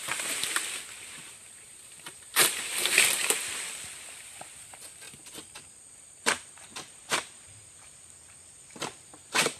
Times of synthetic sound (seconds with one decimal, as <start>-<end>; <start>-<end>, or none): 0.0-3.2; 6.0-9.6